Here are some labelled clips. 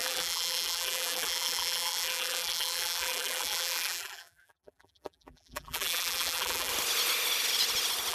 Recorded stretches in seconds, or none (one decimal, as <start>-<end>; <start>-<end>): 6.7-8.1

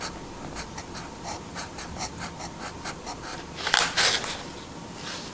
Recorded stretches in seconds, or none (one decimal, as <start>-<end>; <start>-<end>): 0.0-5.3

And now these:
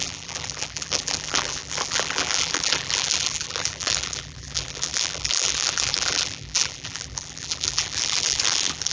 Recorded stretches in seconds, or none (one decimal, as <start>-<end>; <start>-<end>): none

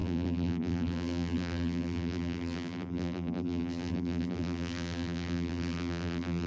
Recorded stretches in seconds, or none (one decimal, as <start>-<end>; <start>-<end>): none

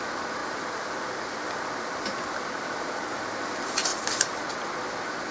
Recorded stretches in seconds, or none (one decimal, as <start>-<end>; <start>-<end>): 0.0-0.4; 3.4-3.9; 4.4-5.3

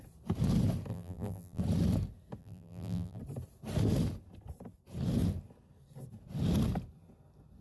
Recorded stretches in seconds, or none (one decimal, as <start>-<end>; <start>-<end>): 0.0-0.9; 1.6-2.4; 3.2-7.6

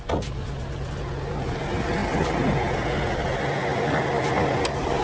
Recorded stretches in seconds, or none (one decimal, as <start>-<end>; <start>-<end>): 0.0-5.0